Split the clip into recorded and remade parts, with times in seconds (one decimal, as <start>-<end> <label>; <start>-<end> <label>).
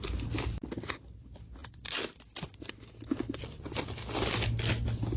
0.0-5.2 recorded